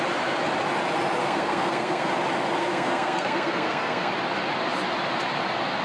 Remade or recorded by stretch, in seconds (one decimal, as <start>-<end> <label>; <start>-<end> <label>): 0.0-1.2 recorded; 1.2-2.1 remade; 2.1-2.6 recorded; 2.6-4.1 remade; 4.1-5.8 recorded